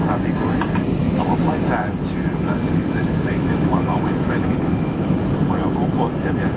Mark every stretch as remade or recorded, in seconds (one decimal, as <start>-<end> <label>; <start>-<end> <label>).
0.0-1.0 recorded; 1.0-1.5 remade; 1.5-3.3 recorded; 3.3-5.1 remade; 5.1-6.6 recorded